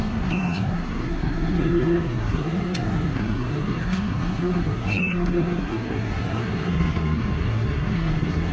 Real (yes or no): no